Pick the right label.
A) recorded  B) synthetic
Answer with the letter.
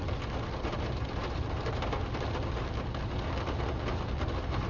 A